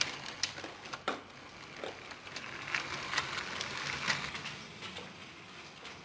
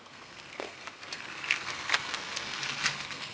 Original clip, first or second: first